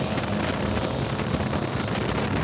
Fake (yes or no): no